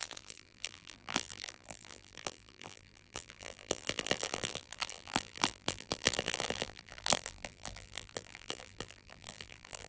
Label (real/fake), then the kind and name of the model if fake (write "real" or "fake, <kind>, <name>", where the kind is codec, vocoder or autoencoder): fake, vocoder, BigVGAN v2